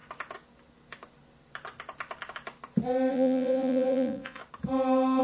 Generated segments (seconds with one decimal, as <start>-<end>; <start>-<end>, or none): 3.1-4.4